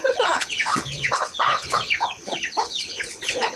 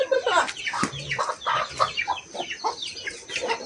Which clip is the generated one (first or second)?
first